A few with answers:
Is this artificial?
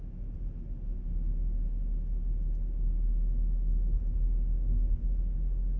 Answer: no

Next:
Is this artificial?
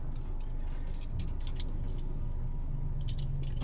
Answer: no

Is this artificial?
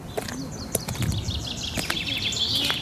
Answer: no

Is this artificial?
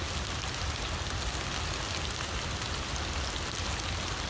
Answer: no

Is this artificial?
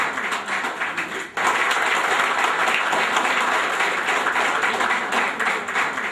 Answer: no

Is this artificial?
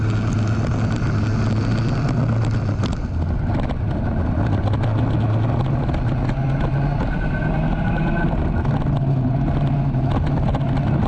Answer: no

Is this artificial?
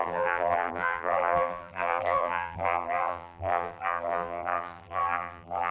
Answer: yes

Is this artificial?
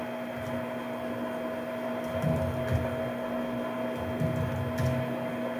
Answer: no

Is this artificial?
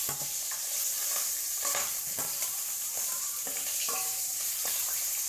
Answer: yes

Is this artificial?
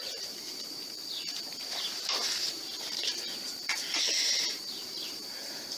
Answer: yes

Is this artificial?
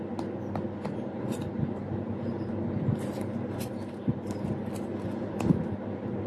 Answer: no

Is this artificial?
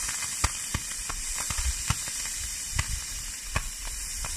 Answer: no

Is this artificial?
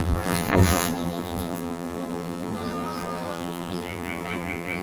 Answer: yes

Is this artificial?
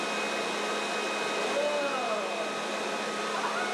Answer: no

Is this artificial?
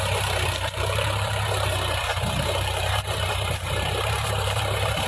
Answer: yes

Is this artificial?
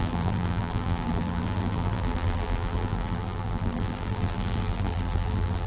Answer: yes